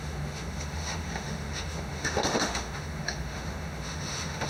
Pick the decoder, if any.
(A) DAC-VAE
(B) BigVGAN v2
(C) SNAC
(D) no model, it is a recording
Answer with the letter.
A